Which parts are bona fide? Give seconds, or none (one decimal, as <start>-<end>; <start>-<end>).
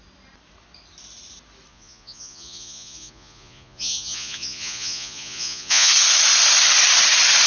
0.0-1.7; 5.9-7.5